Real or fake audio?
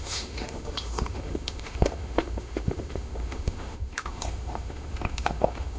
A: fake